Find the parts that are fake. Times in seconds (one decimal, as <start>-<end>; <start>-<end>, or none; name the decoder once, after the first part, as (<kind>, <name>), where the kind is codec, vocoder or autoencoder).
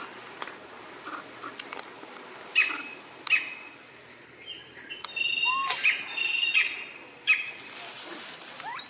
none